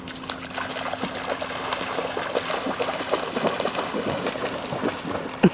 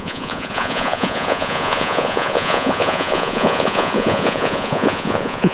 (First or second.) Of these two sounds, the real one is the first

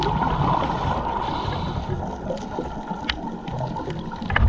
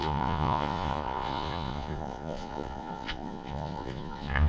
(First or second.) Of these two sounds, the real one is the first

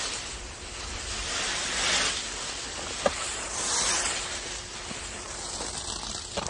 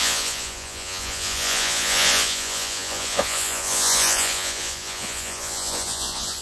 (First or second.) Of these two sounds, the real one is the first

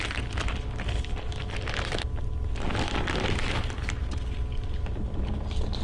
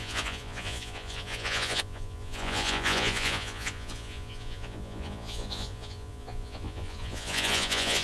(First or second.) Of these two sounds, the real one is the first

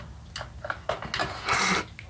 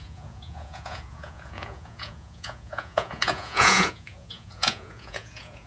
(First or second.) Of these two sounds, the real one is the first